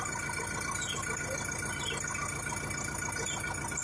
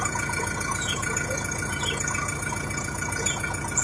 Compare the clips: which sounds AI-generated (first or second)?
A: second